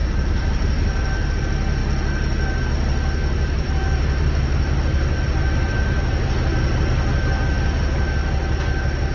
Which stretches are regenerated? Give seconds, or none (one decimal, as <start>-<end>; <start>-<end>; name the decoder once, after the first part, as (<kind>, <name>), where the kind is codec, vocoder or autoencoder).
0.0-1.4 (vocoder, BigVGAN v2); 3.2-6.3